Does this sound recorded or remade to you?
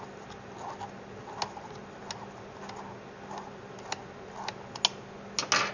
recorded